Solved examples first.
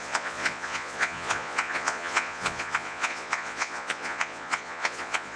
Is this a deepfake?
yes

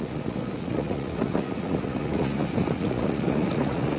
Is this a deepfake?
yes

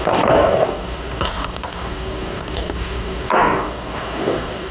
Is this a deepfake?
yes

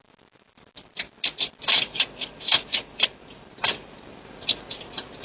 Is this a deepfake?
no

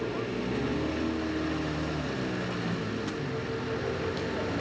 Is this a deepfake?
no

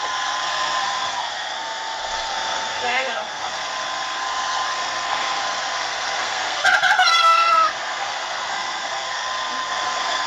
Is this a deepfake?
yes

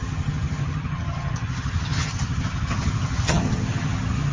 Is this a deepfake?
yes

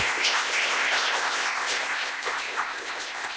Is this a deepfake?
yes